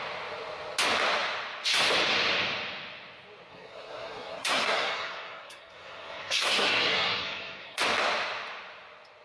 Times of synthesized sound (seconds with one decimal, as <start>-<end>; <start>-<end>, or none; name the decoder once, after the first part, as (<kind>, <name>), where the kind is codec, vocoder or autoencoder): 3.5-7.8 (codec, SNAC)